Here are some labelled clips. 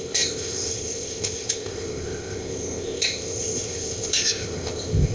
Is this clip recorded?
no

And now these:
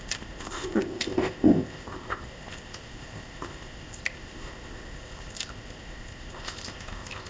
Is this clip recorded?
no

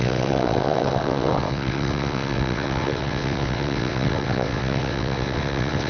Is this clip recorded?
no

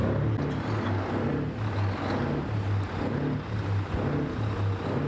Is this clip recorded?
yes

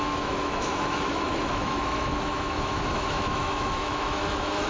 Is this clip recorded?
no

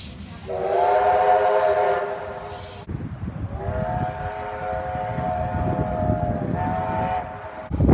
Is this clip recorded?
yes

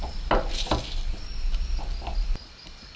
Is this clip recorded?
yes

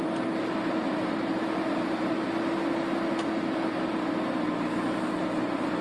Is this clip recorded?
yes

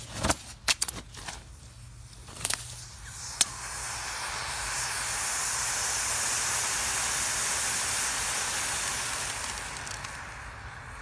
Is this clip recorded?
yes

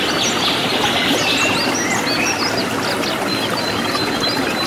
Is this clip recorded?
yes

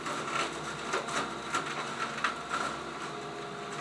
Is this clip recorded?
yes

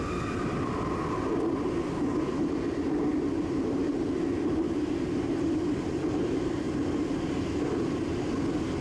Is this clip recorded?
yes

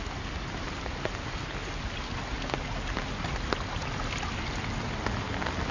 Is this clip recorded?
yes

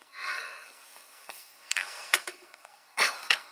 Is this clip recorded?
no